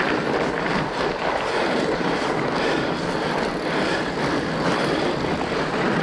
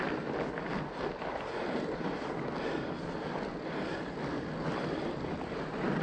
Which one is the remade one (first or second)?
first